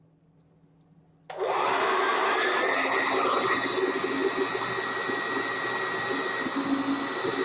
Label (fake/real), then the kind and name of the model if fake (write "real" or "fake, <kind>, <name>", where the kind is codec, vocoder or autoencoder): real